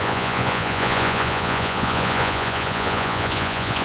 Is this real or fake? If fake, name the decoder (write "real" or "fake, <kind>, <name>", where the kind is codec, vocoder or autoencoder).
fake, vocoder, Vocos